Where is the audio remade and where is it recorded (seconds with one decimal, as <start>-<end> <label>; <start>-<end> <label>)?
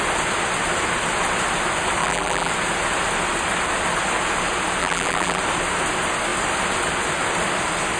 0.0-2.0 recorded; 2.0-2.5 remade; 2.5-4.8 recorded; 4.8-5.4 remade; 5.4-8.0 recorded